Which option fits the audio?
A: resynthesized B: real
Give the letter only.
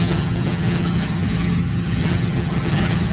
A